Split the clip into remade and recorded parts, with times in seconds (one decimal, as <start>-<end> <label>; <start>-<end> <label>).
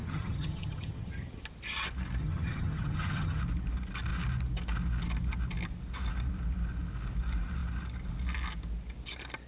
0.0-1.4 remade; 1.4-2.2 recorded; 2.2-3.4 remade; 3.4-9.5 recorded